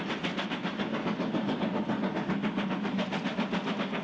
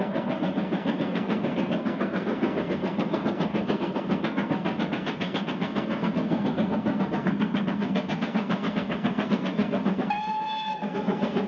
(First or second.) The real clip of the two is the first